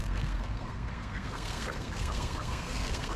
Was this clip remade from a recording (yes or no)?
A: yes